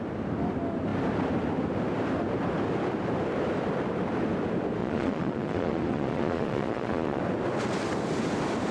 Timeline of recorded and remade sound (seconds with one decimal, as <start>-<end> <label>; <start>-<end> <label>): 0.0-4.8 recorded; 4.8-7.2 remade; 7.2-8.7 recorded